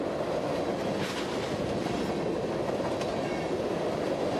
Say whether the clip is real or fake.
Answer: real